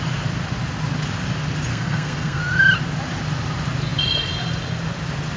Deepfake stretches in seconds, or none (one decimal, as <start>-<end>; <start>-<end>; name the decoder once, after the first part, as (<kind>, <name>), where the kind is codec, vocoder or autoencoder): 1.7-2.4 (codec, SNAC)